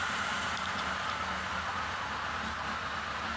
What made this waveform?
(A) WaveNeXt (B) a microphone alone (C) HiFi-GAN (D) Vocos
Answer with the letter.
B